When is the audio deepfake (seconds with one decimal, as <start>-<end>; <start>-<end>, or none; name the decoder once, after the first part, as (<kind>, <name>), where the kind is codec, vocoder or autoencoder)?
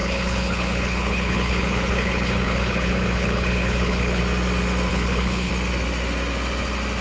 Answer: 0.0-4.2 (codec, HILCodec); 4.9-5.5